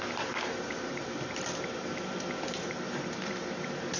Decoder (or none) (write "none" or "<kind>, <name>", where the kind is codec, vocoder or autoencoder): vocoder, BigVGAN v2